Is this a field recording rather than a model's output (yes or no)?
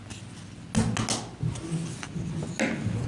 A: yes